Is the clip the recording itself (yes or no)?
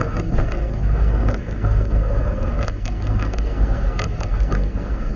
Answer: no